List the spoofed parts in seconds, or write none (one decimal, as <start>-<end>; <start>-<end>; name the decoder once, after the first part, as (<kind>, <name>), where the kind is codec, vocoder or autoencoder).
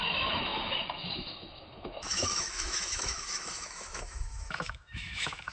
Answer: 0.0-5.5 (autoencoder, DAC-VAE)